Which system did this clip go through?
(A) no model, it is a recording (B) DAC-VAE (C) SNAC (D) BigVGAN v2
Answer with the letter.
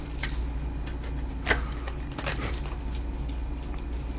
A